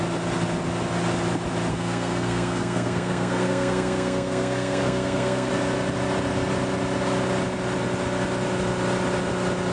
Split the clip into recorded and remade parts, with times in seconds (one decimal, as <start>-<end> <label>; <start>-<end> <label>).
0.0-1.7 recorded; 1.7-5.5 remade; 5.5-9.7 recorded